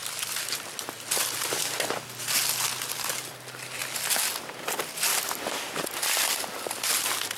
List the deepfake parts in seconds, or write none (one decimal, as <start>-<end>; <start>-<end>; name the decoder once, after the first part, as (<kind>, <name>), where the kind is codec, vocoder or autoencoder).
5.1-6.9 (vocoder, BigVGAN v2)